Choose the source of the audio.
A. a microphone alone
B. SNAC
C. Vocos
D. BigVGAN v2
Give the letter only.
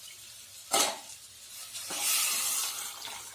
A